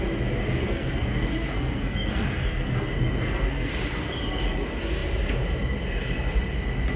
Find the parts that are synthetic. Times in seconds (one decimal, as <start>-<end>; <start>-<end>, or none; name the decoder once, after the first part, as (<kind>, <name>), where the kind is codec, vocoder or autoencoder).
0.6-3.7 (codec, SNAC)